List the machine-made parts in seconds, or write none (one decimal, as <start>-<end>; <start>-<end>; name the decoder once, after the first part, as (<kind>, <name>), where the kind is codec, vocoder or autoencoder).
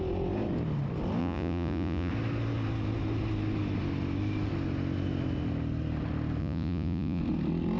1.2-2.1 (vocoder, Vocos); 6.4-7.2